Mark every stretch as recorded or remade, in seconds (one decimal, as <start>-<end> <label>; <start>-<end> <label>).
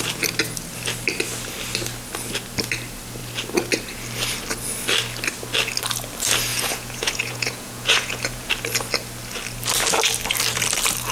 0.0-6.5 recorded; 6.5-8.5 remade; 8.5-11.1 recorded